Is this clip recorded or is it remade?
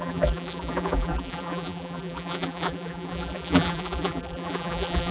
remade